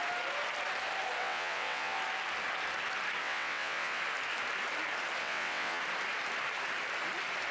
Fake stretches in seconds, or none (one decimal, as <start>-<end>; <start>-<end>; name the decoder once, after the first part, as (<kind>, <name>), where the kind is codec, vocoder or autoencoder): 1.2-2.0 (vocoder, WaveNeXt); 3.2-4.0; 5.2-5.8